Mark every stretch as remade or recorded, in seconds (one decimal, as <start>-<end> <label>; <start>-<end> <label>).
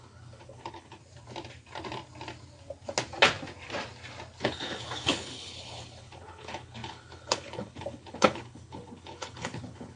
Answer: 0.0-1.0 remade; 1.0-4.4 recorded; 4.4-10.0 remade